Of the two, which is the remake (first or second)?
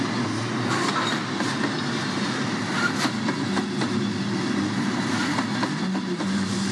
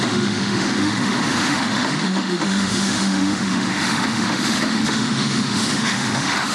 second